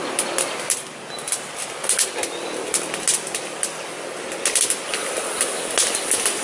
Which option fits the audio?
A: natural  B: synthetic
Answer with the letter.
A